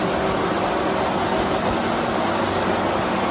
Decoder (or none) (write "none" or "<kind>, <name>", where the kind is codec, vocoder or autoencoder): none